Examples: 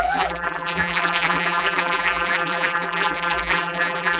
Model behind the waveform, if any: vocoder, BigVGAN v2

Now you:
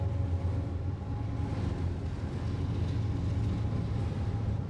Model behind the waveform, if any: none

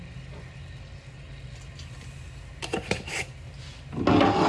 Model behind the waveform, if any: none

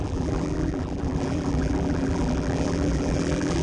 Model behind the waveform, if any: vocoder, BigVGAN v2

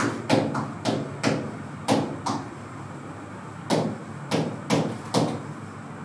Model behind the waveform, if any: none